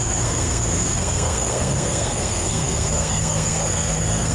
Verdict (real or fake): fake